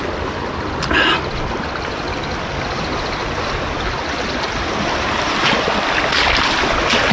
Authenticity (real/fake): real